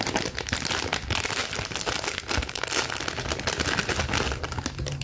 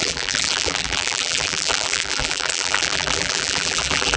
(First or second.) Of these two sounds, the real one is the first